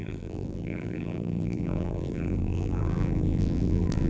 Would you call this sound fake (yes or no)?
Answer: yes